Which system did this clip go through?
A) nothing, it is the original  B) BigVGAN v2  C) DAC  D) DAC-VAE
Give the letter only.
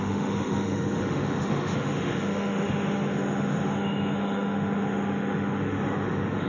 D